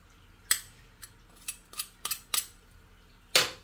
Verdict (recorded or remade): recorded